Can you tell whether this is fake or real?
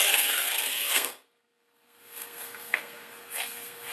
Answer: fake